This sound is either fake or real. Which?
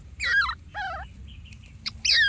real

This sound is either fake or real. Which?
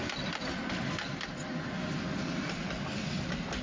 real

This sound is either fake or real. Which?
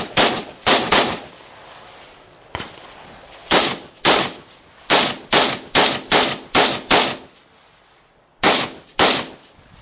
real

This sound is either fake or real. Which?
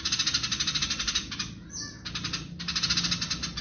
real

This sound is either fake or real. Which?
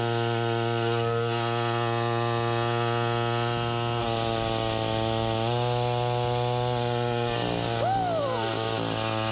real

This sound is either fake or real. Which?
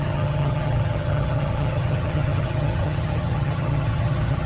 fake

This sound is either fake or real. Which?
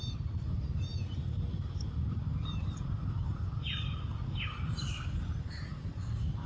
real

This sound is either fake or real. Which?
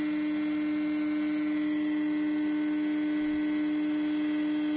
real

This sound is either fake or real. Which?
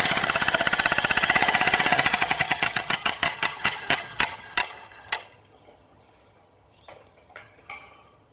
fake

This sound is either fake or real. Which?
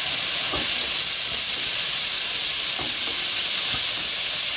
real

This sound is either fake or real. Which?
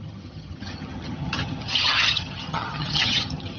fake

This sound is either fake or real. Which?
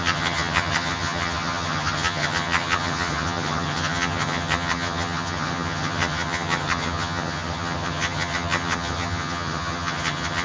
fake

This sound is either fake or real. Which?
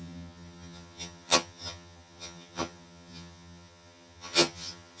fake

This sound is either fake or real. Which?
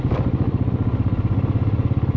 real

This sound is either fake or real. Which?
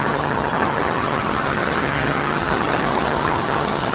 fake